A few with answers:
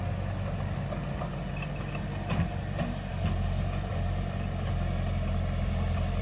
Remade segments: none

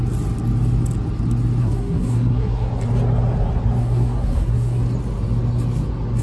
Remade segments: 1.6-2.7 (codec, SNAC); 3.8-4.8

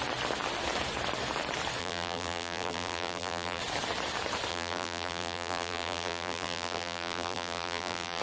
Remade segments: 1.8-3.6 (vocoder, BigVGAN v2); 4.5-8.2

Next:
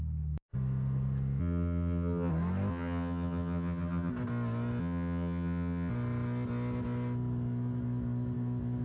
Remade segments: 1.4-2.3 (vocoder, HiFi-GAN); 2.7-4.1; 4.8-5.9

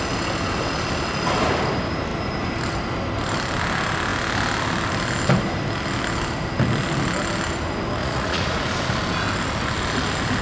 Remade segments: 8.0-8.6 (vocoder, Vocos)